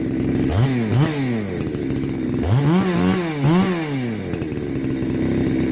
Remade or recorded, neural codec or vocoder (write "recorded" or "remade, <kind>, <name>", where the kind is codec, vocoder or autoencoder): recorded